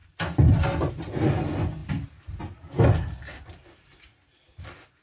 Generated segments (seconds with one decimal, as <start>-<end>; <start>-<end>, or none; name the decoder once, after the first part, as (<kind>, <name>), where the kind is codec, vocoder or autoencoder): none